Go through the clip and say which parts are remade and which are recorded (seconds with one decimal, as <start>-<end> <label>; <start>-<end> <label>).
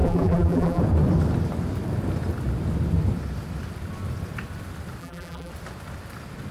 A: 0.0-0.8 remade; 0.8-5.0 recorded; 5.0-5.5 remade; 5.5-6.5 recorded